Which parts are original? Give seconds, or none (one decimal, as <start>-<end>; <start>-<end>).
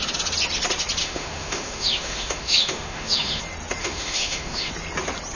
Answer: 0.0-1.0; 3.4-3.8; 4.7-5.3